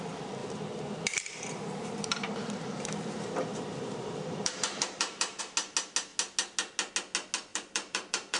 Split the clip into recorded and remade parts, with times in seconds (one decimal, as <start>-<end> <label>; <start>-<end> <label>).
0.0-0.4 recorded; 0.4-5.4 remade; 5.4-7.5 recorded; 7.5-8.4 remade